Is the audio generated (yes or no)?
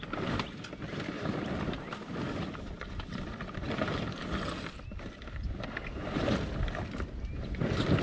no